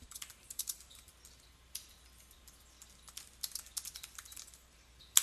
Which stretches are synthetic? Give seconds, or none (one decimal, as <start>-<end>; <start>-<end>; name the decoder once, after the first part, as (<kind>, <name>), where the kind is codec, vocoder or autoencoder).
0.0-1.1 (vocoder, BigVGAN v2); 4.2-5.2